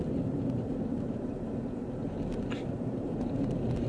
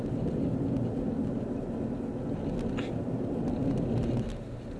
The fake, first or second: first